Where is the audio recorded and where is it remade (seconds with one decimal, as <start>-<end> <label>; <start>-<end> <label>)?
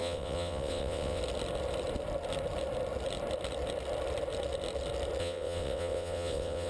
0.0-1.2 remade; 1.2-5.2 recorded; 5.2-6.7 remade